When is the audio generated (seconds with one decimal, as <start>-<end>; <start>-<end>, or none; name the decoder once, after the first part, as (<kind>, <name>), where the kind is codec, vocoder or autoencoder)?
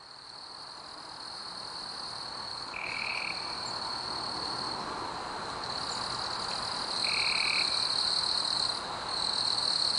2.5-3.2 (codec, HILCodec)